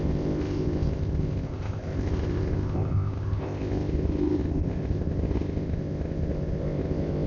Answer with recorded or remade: remade